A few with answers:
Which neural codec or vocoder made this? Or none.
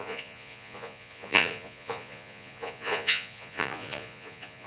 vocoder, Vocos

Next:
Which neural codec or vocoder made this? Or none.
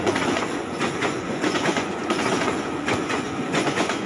vocoder, Vocos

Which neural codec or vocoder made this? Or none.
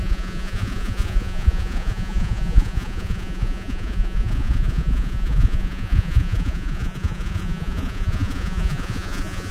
vocoder, Vocos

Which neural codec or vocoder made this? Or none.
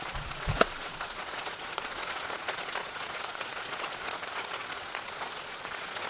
vocoder, Vocos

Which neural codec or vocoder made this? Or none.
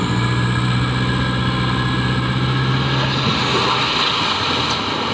none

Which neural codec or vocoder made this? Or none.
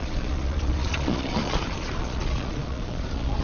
vocoder, Vocos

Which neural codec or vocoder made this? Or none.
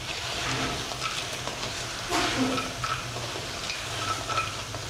none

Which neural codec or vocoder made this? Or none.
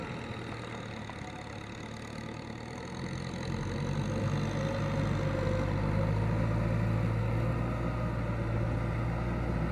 none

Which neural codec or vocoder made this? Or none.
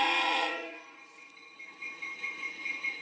vocoder, Vocos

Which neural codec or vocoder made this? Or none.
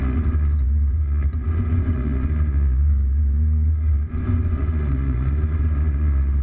vocoder, Vocos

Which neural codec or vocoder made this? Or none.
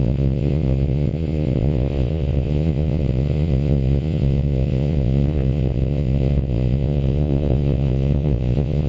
vocoder, Vocos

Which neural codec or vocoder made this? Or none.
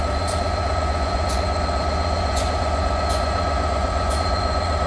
vocoder, Vocos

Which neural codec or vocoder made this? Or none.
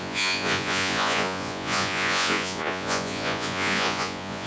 vocoder, Vocos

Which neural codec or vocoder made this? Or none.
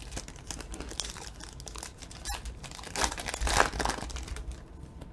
none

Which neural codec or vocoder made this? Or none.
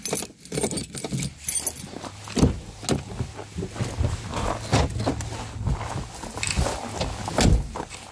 none